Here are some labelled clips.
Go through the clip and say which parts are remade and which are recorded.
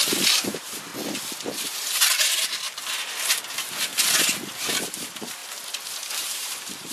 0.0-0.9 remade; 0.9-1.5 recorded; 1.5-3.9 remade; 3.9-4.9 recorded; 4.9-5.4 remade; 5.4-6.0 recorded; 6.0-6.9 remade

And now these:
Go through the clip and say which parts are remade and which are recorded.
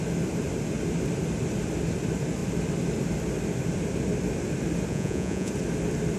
0.0-4.9 recorded; 4.9-5.5 remade; 5.5-6.2 recorded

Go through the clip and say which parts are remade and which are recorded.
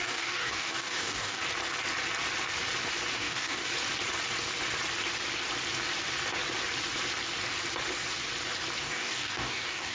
0.0-1.4 remade; 1.4-3.1 recorded; 3.1-3.7 remade; 3.7-8.8 recorded; 8.8-9.9 remade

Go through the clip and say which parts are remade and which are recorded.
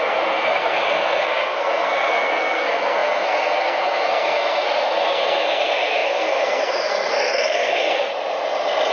0.0-8.1 remade; 8.1-8.9 recorded